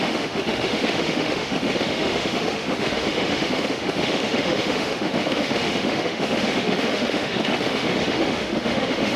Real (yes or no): no